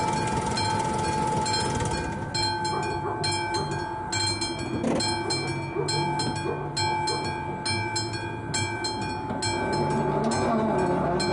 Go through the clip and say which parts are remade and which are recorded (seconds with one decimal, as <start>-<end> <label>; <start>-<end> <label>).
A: 0.0-11.3 recorded